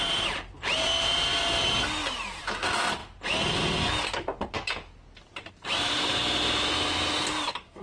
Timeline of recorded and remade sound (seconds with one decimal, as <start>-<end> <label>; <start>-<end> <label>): 0.0-1.3 remade; 1.3-2.4 recorded; 2.4-3.0 remade; 3.0-5.5 recorded; 5.5-6.2 remade; 6.2-7.3 recorded; 7.3-7.8 remade